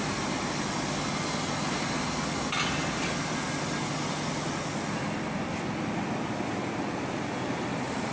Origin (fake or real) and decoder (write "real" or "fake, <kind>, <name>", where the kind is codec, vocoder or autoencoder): real